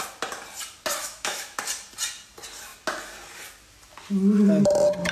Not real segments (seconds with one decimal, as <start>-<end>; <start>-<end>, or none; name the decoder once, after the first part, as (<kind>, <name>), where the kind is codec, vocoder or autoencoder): 1.0-1.6 (autoencoder, DAC-VAE)